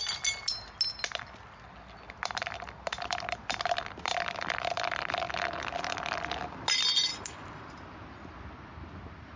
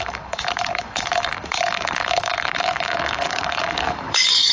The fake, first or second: second